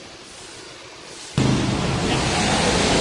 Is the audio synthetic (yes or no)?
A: no